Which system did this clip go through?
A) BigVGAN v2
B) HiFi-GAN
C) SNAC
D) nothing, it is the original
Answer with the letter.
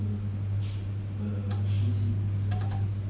D